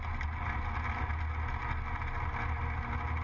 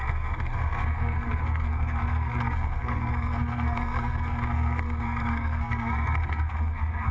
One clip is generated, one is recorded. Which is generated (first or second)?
second